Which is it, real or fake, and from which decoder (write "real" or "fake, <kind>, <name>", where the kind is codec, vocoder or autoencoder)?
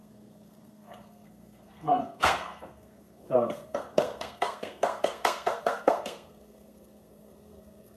fake, codec, SNAC